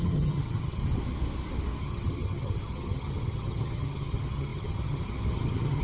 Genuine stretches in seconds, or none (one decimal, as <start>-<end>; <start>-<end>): 0.8-1.8

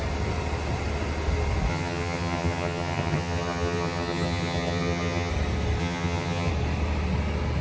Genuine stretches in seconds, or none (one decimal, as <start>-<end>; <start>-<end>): 0.0-1.7; 5.3-5.8; 6.5-7.6

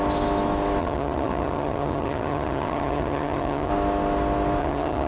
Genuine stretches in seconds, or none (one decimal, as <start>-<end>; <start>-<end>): 0.0-0.8; 3.7-4.6

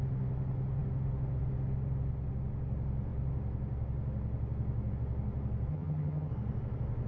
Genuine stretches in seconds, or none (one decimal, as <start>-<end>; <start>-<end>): 0.0-5.7; 6.3-7.1

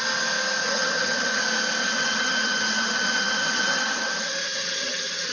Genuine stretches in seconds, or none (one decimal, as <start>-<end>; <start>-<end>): 0.0-0.6; 1.4-1.8

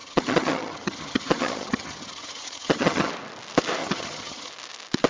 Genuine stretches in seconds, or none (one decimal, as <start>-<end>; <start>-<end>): 3.1-3.8; 4.5-5.1

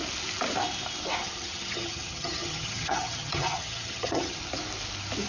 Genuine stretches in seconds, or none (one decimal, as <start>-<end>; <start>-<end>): 0.0-1.2; 4.4-5.3